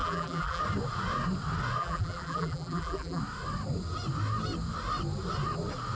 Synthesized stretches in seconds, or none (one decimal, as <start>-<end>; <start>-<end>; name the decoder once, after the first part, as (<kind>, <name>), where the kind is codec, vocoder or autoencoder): 0.0-0.6 (vocoder, BigVGAN v2); 1.8-3.2